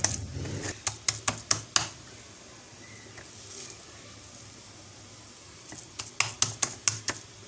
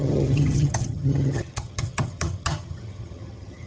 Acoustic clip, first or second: first